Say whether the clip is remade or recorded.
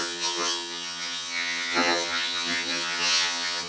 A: remade